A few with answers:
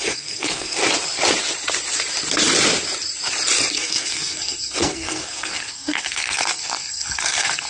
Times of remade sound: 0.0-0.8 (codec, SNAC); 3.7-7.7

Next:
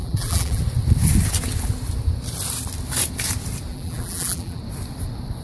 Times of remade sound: 0.0-0.6 (vocoder, BigVGAN v2); 3.7-4.6